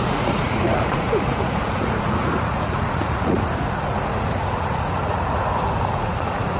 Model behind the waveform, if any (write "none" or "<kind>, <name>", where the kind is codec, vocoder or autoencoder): vocoder, Vocos